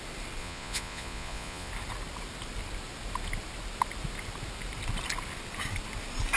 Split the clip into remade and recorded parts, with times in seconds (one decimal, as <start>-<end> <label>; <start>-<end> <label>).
0.0-0.4 recorded; 0.4-1.7 remade; 1.7-6.4 recorded